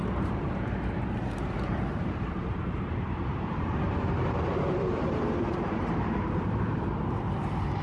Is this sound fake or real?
fake